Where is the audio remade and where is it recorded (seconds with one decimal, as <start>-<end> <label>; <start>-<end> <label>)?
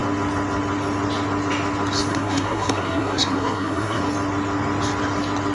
0.0-2.1 recorded; 2.1-4.0 remade; 4.0-5.5 recorded